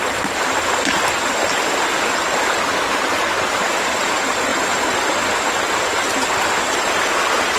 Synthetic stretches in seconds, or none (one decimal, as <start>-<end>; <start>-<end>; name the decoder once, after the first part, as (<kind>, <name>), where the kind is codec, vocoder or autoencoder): none